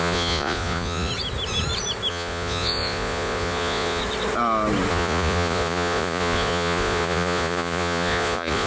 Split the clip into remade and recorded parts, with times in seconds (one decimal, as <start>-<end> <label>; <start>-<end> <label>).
0.0-1.1 remade; 1.1-2.1 recorded; 2.1-4.0 remade; 4.0-4.9 recorded; 4.9-8.7 remade